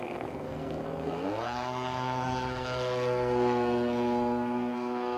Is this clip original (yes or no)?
no